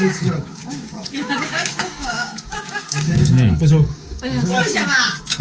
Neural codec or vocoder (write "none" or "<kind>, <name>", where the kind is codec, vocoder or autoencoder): codec, DAC